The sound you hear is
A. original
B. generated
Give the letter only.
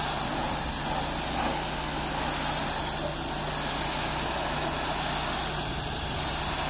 A